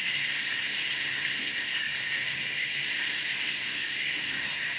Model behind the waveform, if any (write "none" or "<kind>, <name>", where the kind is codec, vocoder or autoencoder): codec, SNAC